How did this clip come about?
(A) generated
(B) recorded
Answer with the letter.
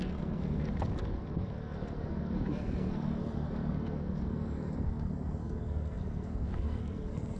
A